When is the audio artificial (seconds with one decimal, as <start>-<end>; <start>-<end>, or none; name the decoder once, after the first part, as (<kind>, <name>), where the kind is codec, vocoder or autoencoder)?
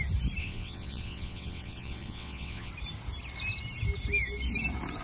0.4-2.7 (vocoder, WaveNeXt)